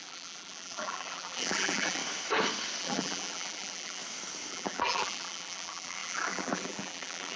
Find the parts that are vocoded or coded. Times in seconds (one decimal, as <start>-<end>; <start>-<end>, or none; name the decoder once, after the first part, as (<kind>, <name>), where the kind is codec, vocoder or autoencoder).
0.0-2.0 (vocoder, BigVGAN v2); 2.8-4.0; 4.5-7.4